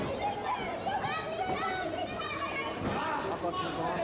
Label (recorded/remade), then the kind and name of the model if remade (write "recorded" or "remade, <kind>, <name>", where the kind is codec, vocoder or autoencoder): recorded